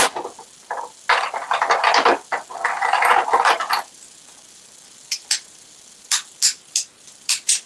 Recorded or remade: recorded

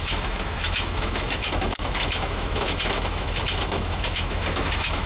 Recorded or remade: remade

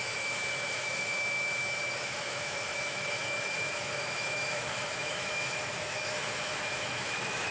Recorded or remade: remade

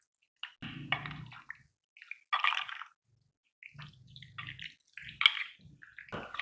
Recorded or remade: recorded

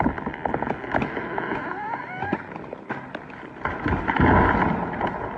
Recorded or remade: recorded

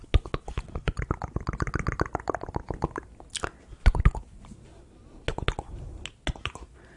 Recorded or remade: recorded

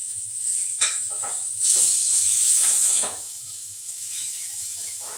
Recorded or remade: remade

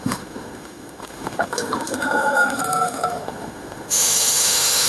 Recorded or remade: remade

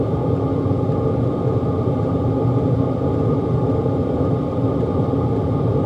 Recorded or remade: recorded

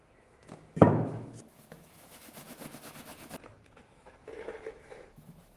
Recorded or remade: remade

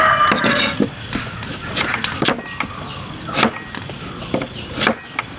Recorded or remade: recorded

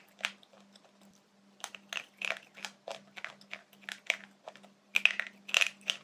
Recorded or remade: recorded